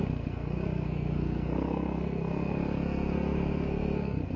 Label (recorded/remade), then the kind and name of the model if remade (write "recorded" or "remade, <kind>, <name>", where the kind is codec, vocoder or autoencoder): remade, codec, SNAC